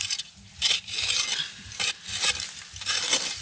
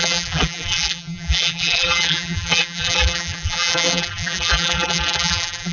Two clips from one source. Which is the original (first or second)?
first